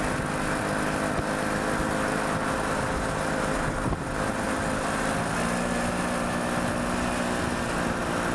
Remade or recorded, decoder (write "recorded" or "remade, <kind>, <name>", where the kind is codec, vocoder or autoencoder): recorded